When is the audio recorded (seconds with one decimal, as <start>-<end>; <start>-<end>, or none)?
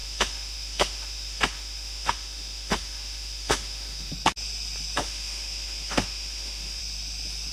4.1-5.0; 6.8-7.5